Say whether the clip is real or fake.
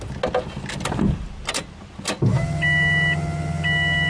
real